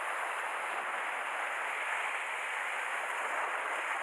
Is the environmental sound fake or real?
real